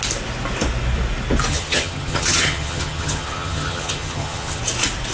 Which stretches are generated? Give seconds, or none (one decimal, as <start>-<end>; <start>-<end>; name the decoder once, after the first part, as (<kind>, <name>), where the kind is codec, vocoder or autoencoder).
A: 1.5-4.6 (vocoder, HiFi-GAN)